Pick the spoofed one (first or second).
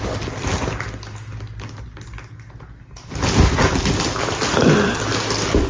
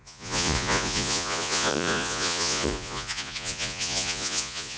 second